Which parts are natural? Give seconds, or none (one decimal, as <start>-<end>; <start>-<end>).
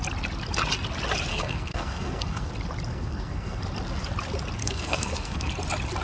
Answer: 0.0-1.3; 2.5-2.9; 3.6-4.6; 5.5-6.0